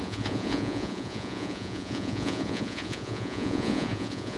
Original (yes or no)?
no